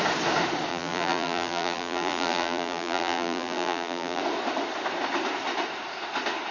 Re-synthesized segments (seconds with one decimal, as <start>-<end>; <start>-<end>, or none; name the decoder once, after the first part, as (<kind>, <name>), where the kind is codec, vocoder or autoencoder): 0.7-4.2 (vocoder, BigVGAN v2)